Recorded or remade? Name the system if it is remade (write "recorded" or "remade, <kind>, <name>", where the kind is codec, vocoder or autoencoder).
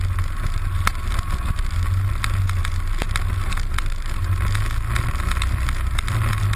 recorded